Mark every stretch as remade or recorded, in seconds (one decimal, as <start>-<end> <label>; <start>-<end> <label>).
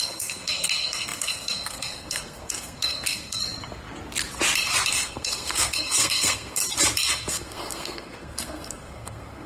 0.0-3.4 remade; 3.4-4.9 recorded; 4.9-6.6 remade; 6.6-7.1 recorded; 7.1-9.5 remade